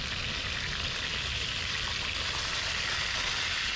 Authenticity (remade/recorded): recorded